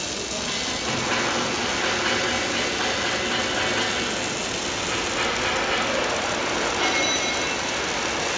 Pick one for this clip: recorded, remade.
recorded